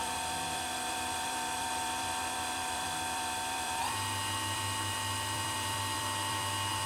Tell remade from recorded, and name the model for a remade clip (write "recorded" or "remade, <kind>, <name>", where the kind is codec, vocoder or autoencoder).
remade, vocoder, BigVGAN v2